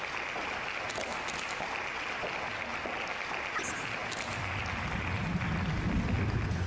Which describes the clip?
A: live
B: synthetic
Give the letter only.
A